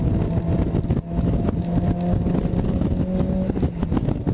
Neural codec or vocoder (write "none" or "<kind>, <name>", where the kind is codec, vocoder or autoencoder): none